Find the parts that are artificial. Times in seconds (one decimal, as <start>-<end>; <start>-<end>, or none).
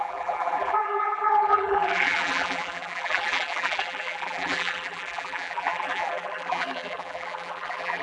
0.0-8.0